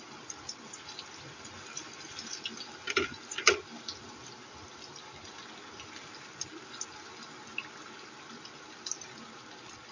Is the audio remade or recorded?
recorded